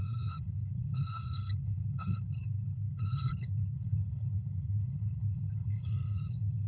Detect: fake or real fake